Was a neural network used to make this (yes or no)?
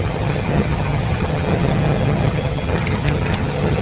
yes